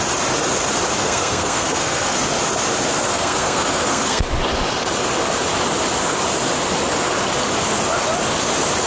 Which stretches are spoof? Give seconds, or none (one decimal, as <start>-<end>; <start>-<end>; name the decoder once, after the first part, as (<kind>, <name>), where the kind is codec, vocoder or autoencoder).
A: 1.0-2.2 (codec, SNAC); 3.1-4.2